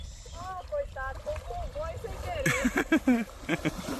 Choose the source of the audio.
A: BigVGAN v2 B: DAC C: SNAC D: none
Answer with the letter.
D